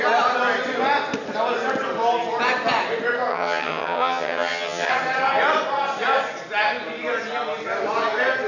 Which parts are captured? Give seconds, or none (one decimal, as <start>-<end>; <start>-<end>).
0.0-3.3; 4.9-8.5